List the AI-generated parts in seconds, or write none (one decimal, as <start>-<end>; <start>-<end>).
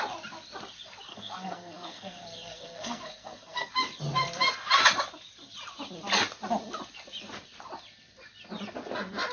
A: 1.1-3.7